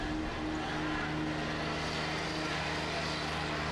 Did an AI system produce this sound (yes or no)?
no